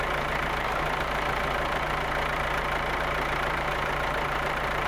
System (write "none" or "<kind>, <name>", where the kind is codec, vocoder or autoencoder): vocoder, BigVGAN v2